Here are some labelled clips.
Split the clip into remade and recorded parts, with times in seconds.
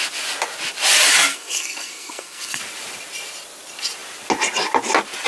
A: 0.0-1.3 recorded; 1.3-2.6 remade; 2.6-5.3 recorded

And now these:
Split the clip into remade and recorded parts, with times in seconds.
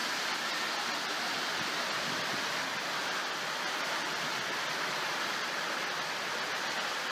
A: 0.0-0.7 remade; 0.7-7.1 recorded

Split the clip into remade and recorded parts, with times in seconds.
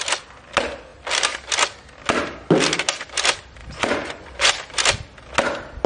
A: 0.0-3.6 recorded; 3.6-4.5 remade; 4.5-5.9 recorded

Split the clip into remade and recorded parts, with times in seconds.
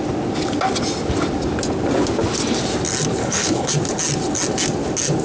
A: 0.0-3.2 recorded; 3.2-3.7 remade; 3.7-5.2 recorded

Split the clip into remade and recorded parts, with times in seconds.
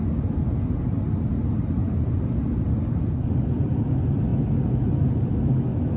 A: 0.0-6.0 recorded